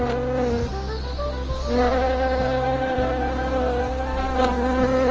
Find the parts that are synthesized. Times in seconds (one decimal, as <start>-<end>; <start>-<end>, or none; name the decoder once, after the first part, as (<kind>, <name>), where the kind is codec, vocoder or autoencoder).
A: none